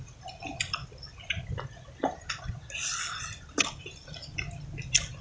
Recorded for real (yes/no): yes